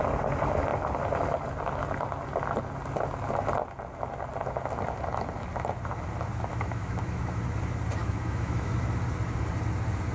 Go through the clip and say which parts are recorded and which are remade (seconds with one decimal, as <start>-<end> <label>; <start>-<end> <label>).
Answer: 0.0-6.5 recorded; 6.5-7.4 remade; 7.4-8.0 recorded; 8.0-8.7 remade; 8.7-10.1 recorded